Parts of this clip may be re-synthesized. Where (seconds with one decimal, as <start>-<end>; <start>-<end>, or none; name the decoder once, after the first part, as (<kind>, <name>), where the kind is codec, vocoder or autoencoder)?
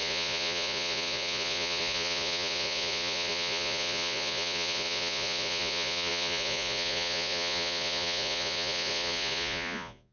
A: 0.0-10.1 (vocoder, Vocos)